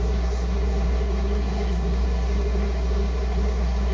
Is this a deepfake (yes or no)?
yes